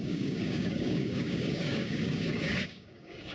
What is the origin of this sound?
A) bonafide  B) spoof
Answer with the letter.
B